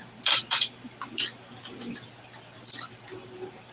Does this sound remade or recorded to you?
recorded